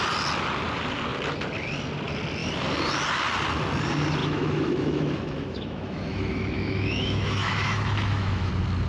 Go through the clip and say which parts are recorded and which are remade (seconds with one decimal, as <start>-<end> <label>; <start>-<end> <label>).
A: 0.0-4.2 recorded; 4.2-8.5 remade; 8.5-8.9 recorded

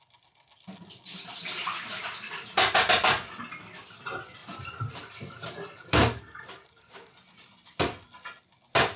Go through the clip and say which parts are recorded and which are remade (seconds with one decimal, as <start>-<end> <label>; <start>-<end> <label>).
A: 0.0-1.6 recorded; 1.6-2.7 remade; 2.7-4.4 recorded; 4.4-7.8 remade; 7.8-9.0 recorded

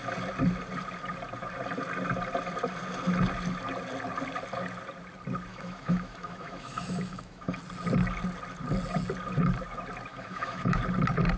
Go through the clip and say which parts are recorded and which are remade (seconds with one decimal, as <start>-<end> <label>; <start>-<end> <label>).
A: 0.0-5.5 recorded; 5.5-7.6 remade; 7.6-10.1 recorded; 10.1-10.8 remade; 10.8-11.4 recorded